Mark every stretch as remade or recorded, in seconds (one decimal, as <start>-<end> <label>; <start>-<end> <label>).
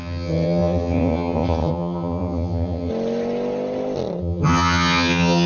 0.0-2.9 remade; 2.9-4.2 recorded; 4.2-5.5 remade